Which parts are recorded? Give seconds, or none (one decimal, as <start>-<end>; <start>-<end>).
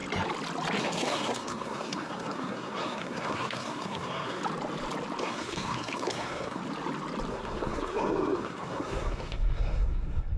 0.0-0.8; 4.4-5.2; 6.6-7.3